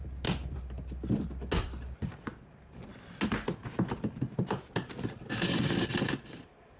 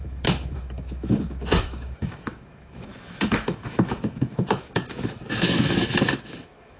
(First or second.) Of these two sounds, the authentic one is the first